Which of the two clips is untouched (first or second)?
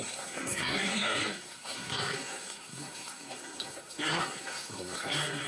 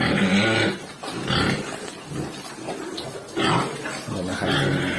second